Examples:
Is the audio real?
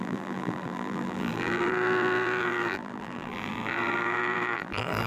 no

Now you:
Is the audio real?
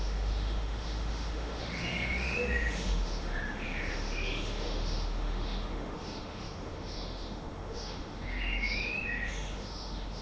no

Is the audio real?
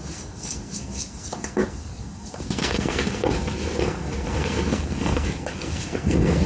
no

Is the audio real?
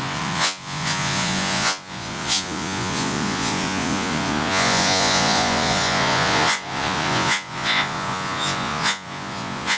no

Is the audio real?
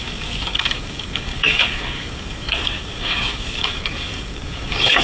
no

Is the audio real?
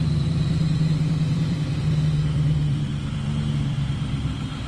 no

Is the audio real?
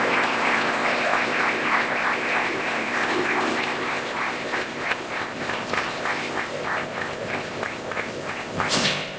no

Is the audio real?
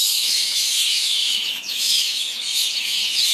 no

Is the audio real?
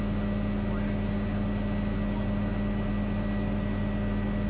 yes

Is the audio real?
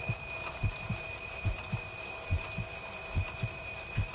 yes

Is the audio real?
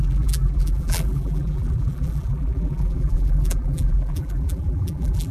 no